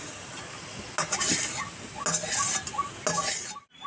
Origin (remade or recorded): recorded